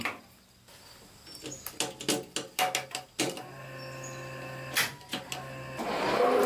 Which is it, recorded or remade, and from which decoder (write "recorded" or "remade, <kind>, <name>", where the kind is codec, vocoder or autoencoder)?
recorded